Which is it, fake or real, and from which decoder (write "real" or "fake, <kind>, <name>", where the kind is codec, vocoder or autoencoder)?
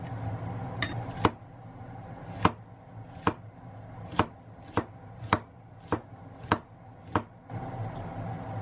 real